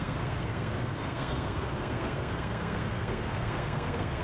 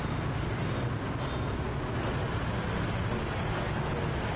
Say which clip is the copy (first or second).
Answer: first